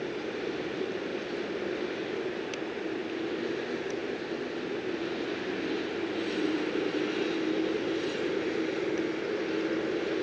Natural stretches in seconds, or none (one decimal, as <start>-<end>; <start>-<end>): 0.0-10.2

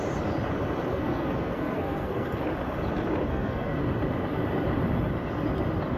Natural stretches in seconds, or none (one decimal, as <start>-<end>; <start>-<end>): 0.0-0.9; 2.4-3.3; 3.8-6.0

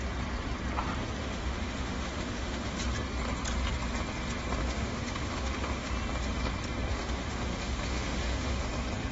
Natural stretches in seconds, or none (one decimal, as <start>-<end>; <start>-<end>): 0.0-1.2; 2.8-4.6; 5.9-6.9; 8.7-9.1

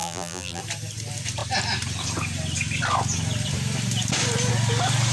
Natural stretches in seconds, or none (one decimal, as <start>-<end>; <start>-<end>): 0.6-5.1

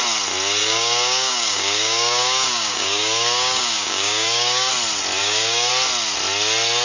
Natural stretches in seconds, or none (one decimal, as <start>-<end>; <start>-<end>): 0.0-0.6; 4.7-5.2; 5.7-6.8

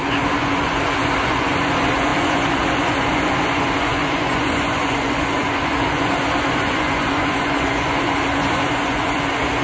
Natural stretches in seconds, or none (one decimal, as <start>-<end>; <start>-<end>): none

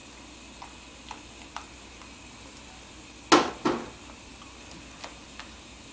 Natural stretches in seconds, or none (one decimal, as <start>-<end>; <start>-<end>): 0.0-5.9

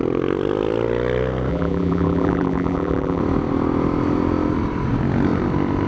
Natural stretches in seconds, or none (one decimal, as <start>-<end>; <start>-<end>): 0.0-1.5; 3.2-5.9